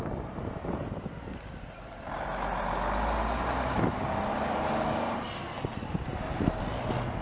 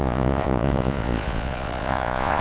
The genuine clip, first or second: first